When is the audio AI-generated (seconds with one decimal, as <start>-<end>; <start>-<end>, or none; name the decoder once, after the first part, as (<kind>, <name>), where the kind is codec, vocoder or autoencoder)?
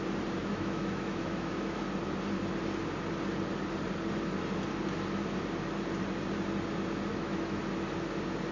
0.4-1.8 (autoencoder, DAC-VAE); 7.1-7.6